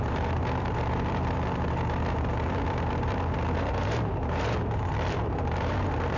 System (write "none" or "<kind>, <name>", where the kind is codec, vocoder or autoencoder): vocoder, BigVGAN v2